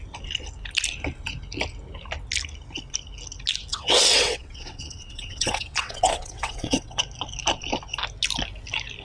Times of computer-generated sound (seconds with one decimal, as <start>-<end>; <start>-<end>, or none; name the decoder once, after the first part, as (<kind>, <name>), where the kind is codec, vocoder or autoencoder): 3.7-7.0 (vocoder, WaveNeXt)